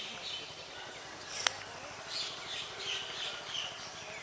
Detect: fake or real real